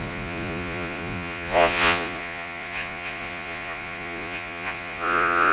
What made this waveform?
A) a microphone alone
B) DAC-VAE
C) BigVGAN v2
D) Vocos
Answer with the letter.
D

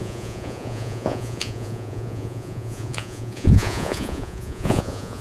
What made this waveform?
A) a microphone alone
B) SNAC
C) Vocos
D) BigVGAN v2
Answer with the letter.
C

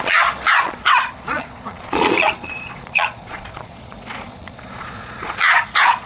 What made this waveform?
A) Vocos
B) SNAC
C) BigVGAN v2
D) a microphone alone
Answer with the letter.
A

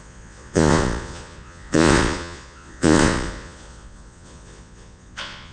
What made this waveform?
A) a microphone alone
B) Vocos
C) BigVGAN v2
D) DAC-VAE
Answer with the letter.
B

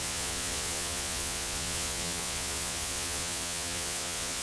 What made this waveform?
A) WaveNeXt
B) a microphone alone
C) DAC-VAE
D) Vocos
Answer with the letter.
D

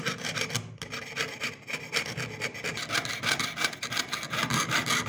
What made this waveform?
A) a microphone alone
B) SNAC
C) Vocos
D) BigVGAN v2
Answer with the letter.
A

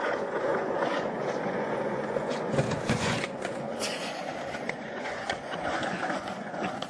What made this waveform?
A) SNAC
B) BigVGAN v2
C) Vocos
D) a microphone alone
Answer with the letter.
C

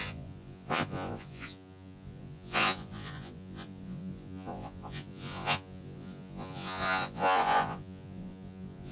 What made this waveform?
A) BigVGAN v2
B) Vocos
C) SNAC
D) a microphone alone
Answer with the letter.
B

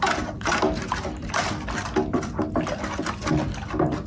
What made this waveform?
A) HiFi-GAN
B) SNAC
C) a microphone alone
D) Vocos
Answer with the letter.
C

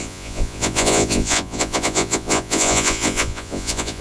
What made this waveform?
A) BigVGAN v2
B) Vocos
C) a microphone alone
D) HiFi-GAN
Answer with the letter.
B